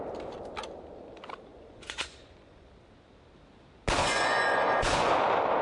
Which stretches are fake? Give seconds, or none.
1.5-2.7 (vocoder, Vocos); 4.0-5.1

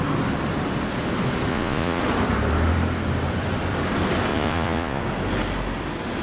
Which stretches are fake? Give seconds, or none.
1.5-2.0 (vocoder, Vocos); 4.3-5.0

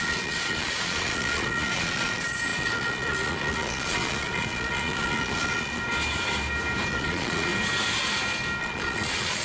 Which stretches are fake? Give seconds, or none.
0.0-5.8 (vocoder, Vocos); 6.9-7.5; 8.6-9.4

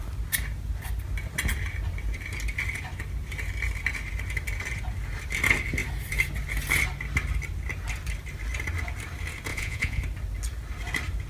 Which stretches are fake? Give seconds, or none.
9.5-10.0 (vocoder, Vocos)

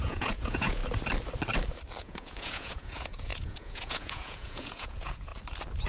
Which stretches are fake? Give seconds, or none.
0.0-0.8 (vocoder, Vocos); 2.0-5.3

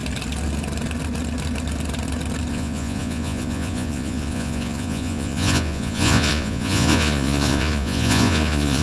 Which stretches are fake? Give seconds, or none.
2.5-8.8 (vocoder, Vocos)